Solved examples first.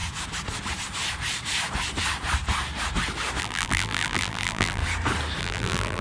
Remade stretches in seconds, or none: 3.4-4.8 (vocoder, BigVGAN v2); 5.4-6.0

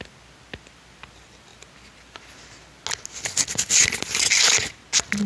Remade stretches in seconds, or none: none

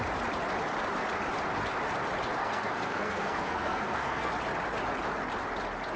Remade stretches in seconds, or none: 2.4-4.3 (codec, SNAC)

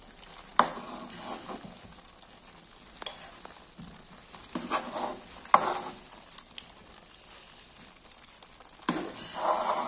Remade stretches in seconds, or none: none

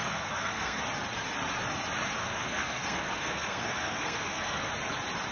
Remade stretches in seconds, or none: 0.0-0.8 (codec, SNAC); 2.2-4.7

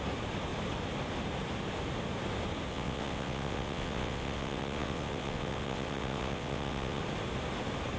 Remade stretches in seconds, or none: 2.7-7.0 (vocoder, WaveNeXt)

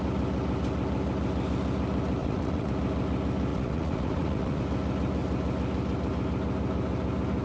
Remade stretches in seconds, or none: 2.2-2.7 (vocoder, Vocos); 3.5-4.6

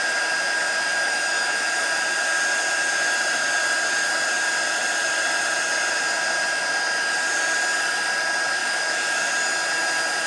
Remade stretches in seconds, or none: 0.9-1.8 (autoencoder, DAC-VAE); 8.6-9.3